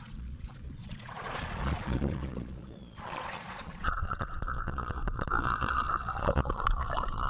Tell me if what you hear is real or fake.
fake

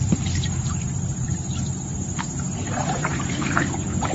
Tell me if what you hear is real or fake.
fake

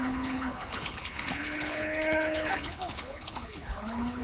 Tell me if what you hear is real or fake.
fake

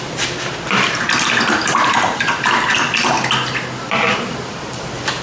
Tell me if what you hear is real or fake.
fake